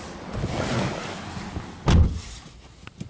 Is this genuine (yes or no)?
yes